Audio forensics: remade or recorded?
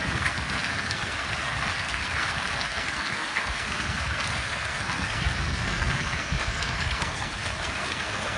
remade